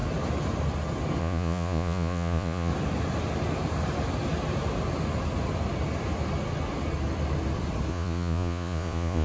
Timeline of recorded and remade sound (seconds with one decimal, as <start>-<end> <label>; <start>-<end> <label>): 0.0-1.2 recorded; 1.2-2.7 remade; 2.7-7.9 recorded; 7.9-9.2 remade

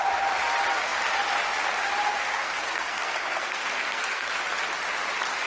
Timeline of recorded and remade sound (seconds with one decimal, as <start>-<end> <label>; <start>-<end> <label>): 0.0-2.3 recorded; 2.3-4.3 remade; 4.3-5.5 recorded

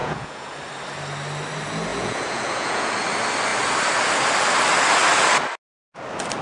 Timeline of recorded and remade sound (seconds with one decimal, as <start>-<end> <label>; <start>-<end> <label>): 0.0-0.6 remade; 0.6-1.9 recorded; 1.9-2.9 remade; 2.9-6.4 recorded

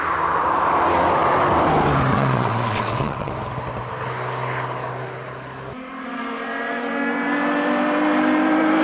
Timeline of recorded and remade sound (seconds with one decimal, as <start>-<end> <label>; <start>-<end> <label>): 0.0-2.1 recorded; 2.1-3.3 remade; 3.3-8.8 recorded

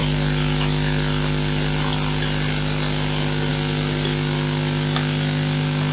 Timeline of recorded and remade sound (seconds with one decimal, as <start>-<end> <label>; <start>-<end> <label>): 0.0-5.9 recorded

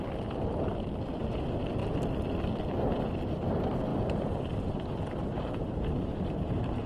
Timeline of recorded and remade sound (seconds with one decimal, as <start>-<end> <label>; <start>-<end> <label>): 0.0-3.9 recorded; 3.9-6.9 remade

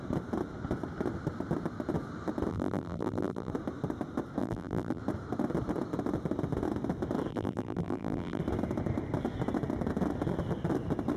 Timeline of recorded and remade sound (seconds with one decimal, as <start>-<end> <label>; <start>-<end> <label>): 0.0-2.5 recorded; 2.5-3.5 remade; 3.5-4.4 recorded; 4.4-5.0 remade; 5.0-7.3 recorded; 7.3-8.4 remade; 8.4-11.2 recorded

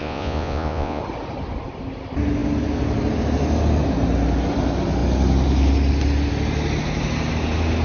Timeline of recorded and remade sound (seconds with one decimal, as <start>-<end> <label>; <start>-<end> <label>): 0.0-1.0 remade; 1.0-7.8 recorded